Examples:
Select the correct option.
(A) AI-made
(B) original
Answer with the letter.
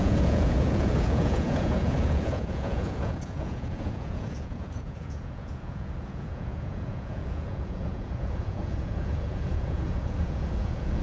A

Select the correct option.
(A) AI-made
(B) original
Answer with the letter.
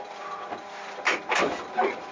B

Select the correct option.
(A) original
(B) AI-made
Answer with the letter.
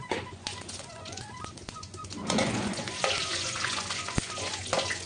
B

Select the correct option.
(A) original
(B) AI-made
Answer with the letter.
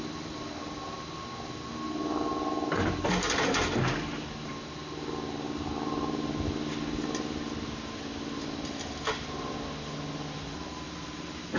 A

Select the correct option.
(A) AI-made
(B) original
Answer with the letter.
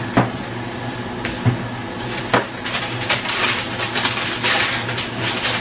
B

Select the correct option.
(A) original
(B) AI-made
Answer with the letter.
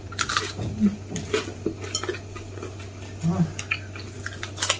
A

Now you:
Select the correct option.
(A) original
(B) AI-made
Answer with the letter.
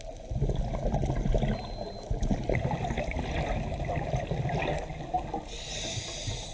A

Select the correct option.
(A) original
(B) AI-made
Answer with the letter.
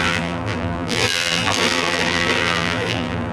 B